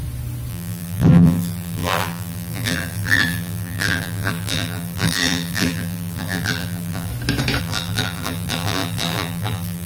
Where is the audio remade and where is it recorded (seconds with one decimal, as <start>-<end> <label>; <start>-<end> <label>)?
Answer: 0.0-0.5 recorded; 0.5-7.1 remade; 7.1-7.6 recorded; 7.6-9.9 remade